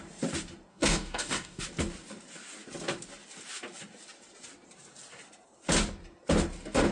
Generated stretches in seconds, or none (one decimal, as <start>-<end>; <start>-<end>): 0.7-1.6